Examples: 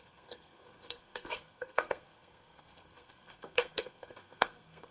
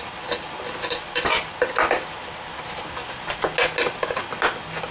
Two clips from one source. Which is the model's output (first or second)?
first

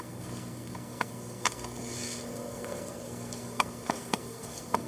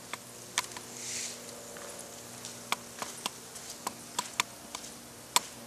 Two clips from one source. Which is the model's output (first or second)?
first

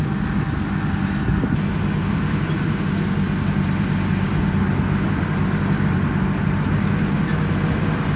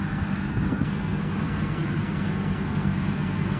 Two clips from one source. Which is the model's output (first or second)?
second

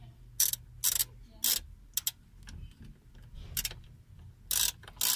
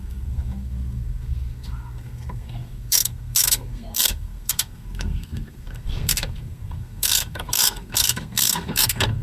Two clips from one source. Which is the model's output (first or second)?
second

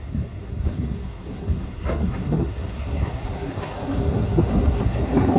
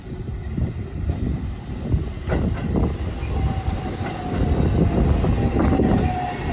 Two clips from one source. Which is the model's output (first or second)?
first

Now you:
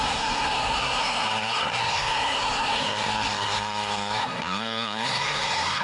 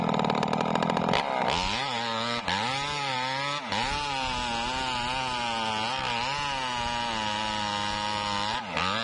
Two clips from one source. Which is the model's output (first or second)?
first